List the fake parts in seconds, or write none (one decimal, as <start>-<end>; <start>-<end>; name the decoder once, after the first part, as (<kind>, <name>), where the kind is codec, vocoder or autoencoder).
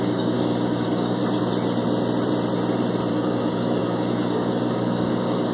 0.0-1.2 (codec, DAC); 3.1-5.5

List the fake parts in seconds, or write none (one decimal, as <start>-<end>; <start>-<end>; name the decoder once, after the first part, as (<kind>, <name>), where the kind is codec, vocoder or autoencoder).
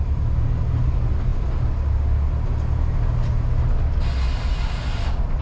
none